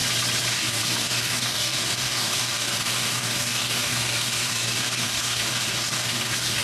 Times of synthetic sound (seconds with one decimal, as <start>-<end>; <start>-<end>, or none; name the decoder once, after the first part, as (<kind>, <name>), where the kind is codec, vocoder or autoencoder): 0.5-6.6 (codec, DAC)